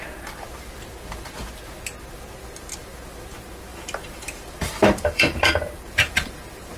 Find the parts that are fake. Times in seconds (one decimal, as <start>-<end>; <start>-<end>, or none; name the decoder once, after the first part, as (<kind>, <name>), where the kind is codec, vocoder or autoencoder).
3.7-6.8 (vocoder, BigVGAN v2)